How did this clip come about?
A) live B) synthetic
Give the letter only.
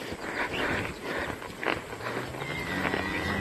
A